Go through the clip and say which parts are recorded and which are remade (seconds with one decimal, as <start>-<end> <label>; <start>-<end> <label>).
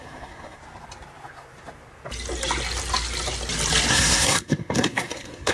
0.0-0.6 remade; 0.6-3.9 recorded; 3.9-5.5 remade